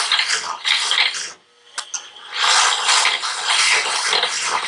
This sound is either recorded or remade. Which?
recorded